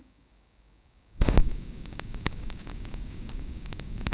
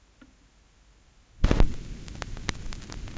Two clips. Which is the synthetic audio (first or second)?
first